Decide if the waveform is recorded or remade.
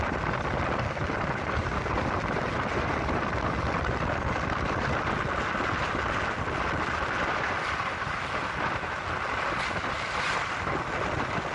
recorded